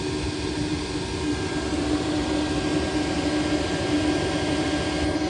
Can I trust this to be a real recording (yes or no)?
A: yes